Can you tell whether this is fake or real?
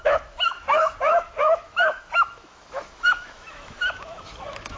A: fake